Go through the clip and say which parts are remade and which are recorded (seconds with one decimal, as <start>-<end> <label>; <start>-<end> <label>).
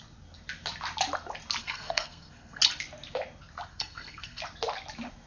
0.0-1.6 recorded; 1.6-2.6 remade; 2.6-3.7 recorded; 3.7-4.4 remade; 4.4-5.3 recorded